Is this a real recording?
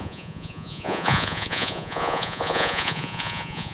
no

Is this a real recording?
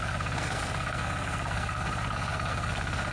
no